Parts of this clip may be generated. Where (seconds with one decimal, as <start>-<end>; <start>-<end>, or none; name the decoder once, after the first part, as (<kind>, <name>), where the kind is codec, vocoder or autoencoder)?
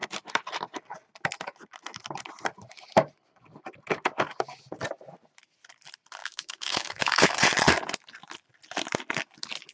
6.2-7.3 (codec, DAC)